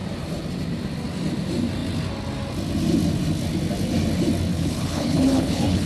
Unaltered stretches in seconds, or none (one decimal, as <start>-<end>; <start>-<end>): 0.0-4.5